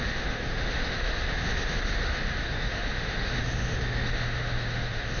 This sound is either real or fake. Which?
fake